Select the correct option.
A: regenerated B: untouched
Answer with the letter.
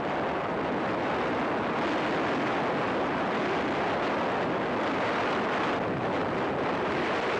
B